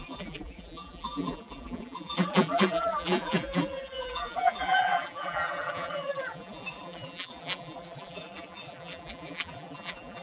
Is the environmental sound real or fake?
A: fake